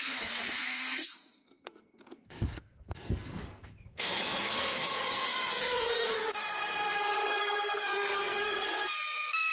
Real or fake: fake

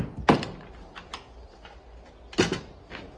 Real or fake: real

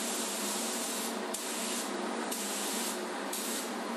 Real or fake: real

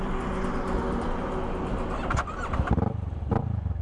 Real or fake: real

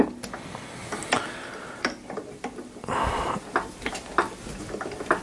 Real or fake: real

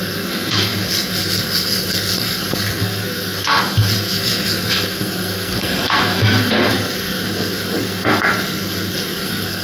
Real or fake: fake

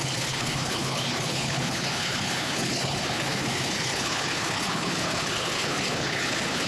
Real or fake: fake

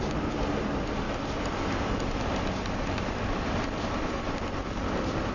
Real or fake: fake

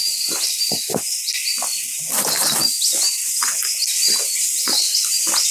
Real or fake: real